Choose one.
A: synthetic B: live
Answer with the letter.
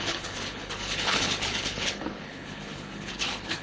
A